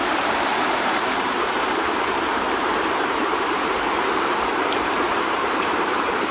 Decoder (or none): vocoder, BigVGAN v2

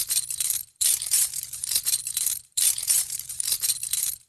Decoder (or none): vocoder, BigVGAN v2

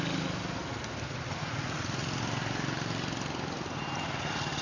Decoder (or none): none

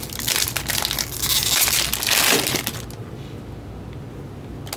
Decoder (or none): none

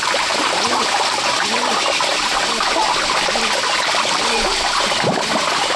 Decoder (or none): none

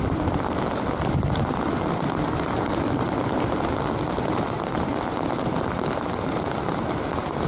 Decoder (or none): vocoder, BigVGAN v2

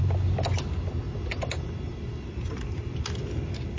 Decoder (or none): none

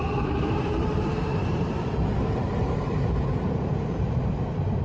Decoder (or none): vocoder, BigVGAN v2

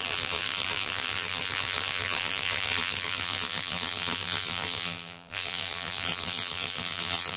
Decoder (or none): vocoder, BigVGAN v2